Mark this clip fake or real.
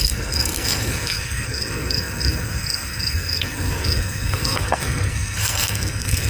fake